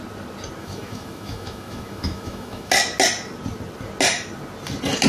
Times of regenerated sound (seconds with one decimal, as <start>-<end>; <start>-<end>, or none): 0.6-2.7